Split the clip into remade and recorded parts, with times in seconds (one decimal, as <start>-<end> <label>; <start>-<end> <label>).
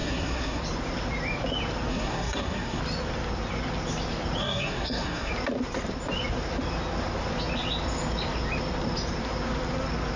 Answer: 0.0-0.6 remade; 0.6-1.9 recorded; 1.9-2.8 remade; 2.8-4.4 recorded; 4.4-5.3 remade; 5.3-10.2 recorded